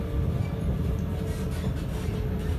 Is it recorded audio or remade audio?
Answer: recorded